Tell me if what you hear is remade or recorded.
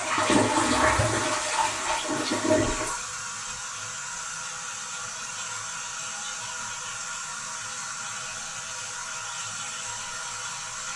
recorded